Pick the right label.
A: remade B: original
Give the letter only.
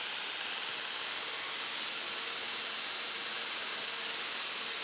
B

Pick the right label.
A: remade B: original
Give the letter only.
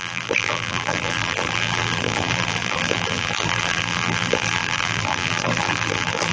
A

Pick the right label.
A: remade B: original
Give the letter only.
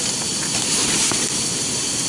B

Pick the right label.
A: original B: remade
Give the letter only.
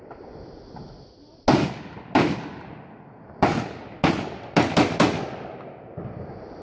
A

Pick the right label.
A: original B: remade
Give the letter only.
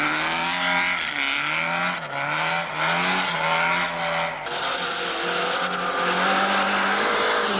A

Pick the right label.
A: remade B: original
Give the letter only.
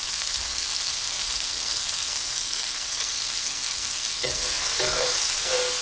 A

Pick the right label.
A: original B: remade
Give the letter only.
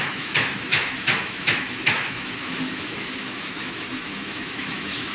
B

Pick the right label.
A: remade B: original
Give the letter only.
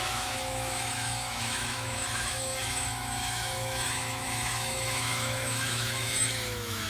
A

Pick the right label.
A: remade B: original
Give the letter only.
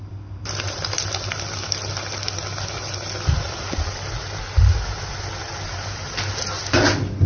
B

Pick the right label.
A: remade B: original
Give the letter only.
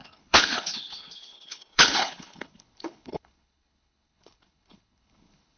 A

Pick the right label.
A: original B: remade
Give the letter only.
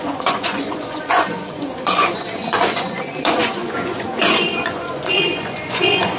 B